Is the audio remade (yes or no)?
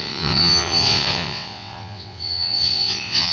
yes